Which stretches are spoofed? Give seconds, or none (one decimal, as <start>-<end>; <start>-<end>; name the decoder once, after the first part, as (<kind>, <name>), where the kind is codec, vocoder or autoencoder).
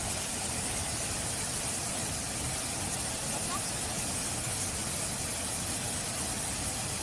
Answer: none